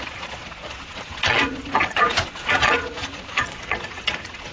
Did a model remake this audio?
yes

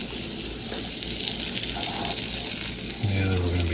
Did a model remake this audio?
no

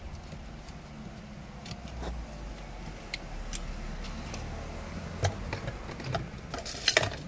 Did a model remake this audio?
no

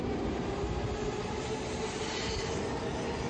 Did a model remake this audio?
no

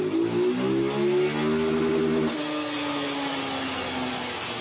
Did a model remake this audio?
no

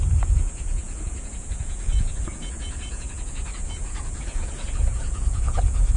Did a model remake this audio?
yes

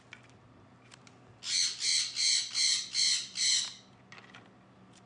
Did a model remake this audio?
no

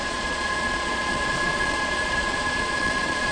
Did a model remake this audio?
yes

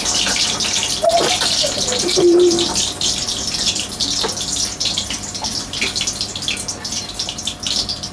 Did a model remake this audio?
no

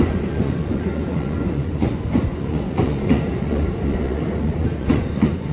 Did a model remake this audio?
yes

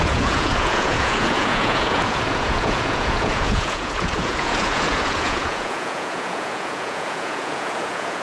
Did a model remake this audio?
yes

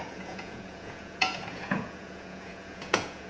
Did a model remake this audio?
yes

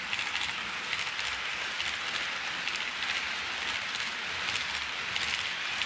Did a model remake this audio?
no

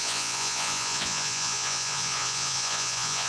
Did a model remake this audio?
yes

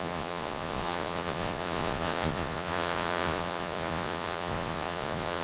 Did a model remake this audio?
yes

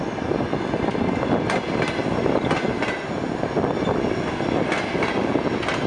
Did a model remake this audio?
no